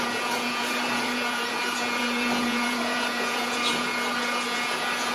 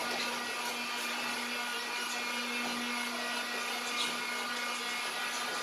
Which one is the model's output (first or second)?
first